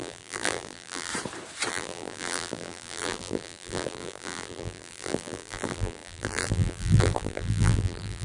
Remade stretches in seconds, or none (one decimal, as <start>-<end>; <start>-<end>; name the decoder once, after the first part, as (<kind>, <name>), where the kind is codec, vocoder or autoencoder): 0.0-1.1 (vocoder, BigVGAN v2); 1.7-8.2